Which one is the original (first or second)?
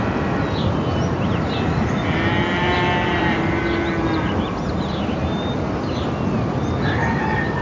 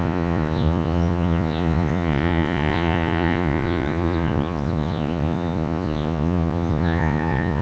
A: first